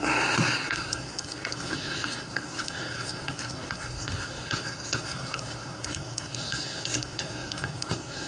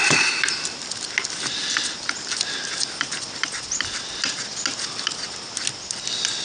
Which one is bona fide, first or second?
second